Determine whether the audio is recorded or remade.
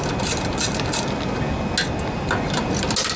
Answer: recorded